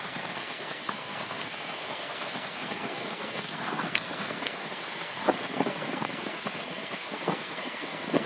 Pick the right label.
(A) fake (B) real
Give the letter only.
A